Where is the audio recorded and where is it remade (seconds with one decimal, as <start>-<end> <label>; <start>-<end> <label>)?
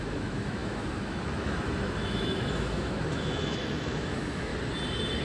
0.0-4.5 remade; 4.5-5.2 recorded